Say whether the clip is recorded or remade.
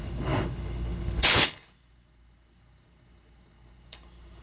remade